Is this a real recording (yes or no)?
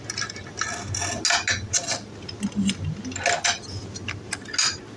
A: yes